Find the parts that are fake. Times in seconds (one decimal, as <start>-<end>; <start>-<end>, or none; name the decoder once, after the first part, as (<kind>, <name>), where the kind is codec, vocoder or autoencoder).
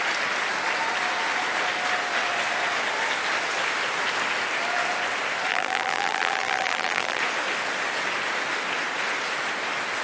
5.5-7.2 (vocoder, BigVGAN v2)